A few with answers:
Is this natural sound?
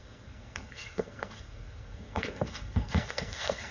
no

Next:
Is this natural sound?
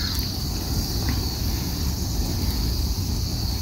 yes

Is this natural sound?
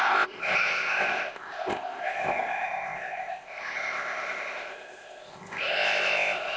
no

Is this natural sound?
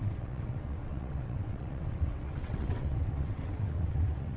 no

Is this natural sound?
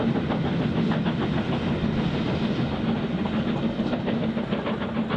yes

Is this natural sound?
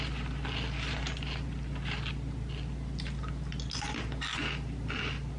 yes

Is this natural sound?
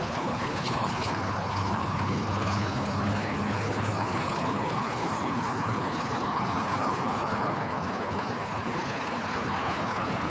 no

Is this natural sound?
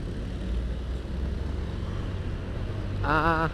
yes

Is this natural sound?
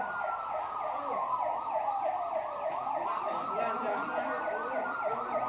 yes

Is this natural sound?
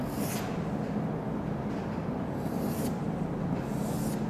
yes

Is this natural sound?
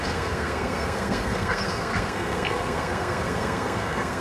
no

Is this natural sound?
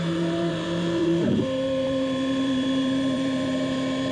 no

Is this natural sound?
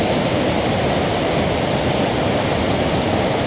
yes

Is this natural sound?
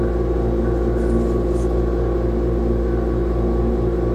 yes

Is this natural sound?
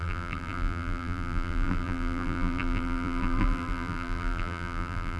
no